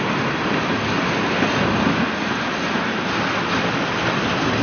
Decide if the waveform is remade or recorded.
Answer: remade